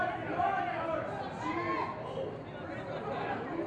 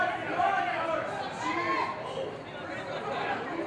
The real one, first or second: first